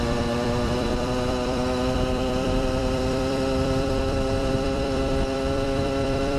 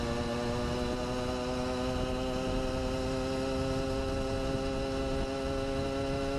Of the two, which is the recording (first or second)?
second